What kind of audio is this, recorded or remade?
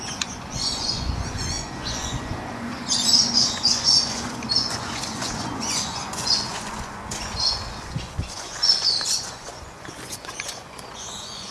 remade